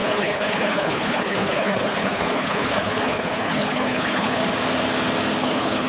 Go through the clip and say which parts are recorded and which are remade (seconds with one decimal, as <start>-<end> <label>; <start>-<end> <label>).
0.0-4.4 remade; 4.4-5.4 recorded; 5.4-5.9 remade